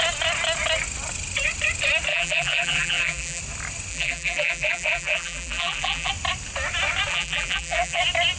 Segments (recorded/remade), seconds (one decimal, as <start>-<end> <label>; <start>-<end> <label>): 0.0-2.1 recorded; 2.1-3.4 remade; 3.4-3.9 recorded; 3.9-6.1 remade; 6.1-7.1 recorded; 7.1-8.0 remade; 8.0-8.4 recorded